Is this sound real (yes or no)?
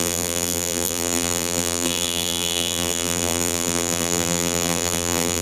no